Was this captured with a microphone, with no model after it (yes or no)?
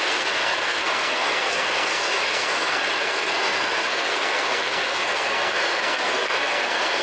no